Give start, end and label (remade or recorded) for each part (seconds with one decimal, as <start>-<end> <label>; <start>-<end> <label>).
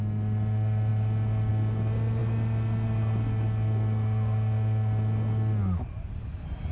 0.0-6.7 recorded